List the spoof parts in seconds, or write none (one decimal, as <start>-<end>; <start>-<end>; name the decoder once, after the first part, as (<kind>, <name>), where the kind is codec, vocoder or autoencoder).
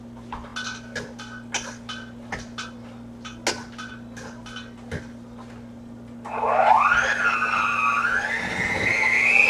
none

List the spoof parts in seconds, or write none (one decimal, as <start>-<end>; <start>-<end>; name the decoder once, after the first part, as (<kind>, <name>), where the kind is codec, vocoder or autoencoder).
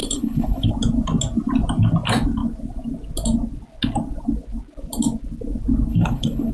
0.0-0.7 (codec, HILCodec); 5.9-6.5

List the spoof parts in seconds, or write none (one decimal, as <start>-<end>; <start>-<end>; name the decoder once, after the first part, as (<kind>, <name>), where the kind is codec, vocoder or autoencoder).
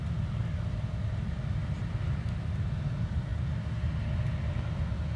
none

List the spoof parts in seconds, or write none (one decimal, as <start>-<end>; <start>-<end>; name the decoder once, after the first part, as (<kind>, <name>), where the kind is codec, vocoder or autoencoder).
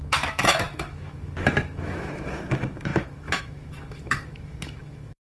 0.0-5.4 (autoencoder, DAC-VAE)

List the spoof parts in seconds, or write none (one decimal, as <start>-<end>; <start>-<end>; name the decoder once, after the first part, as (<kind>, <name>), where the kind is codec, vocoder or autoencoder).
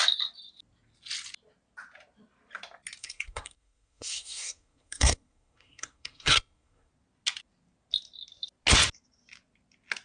3.0-6.9 (codec, SNAC)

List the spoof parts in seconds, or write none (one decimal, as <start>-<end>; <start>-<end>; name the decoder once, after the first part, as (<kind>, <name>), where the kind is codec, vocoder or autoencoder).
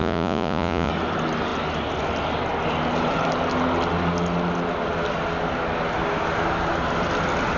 0.0-0.9 (vocoder, Vocos)